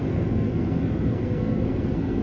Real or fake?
fake